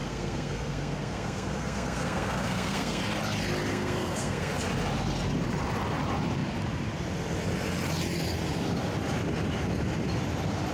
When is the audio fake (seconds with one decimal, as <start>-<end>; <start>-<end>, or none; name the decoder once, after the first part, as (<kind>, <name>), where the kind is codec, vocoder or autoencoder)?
0.0-3.0 (codec, SNAC); 3.7-4.5